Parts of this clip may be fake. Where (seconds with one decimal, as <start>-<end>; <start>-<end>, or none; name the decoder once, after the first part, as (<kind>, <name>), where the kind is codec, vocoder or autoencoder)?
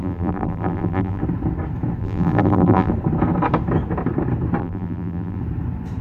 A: 0.0-1.2 (vocoder, BigVGAN v2); 2.0-2.9; 4.6-5.4